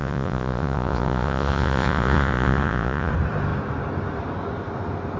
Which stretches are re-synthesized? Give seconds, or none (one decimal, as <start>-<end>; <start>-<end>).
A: 0.0-3.1